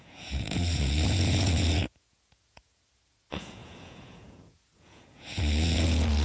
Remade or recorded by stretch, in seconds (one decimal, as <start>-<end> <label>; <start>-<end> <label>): 0.0-6.2 remade